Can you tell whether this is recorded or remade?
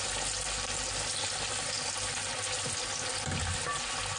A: recorded